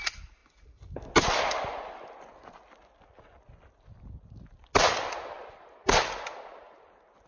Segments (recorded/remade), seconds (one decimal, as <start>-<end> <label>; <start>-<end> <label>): 0.0-7.3 recorded